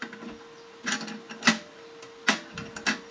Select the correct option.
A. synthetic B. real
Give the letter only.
B